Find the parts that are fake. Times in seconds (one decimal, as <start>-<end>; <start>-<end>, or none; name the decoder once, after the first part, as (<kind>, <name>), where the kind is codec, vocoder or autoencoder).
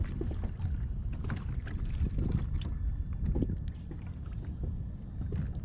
none